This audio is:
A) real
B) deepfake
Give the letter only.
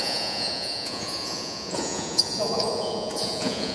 B